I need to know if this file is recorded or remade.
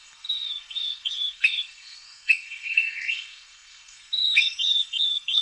remade